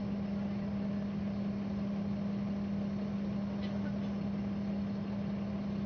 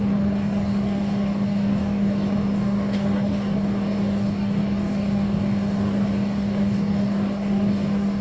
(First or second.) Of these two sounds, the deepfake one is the second